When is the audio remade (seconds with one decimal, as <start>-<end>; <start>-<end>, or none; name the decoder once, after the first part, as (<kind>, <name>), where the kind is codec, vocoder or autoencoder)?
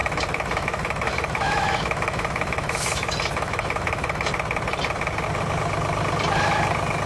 0.0-4.3 (autoencoder, DAC-VAE)